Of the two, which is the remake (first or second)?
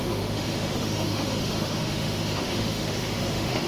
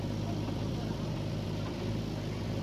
first